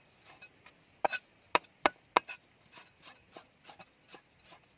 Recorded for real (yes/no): yes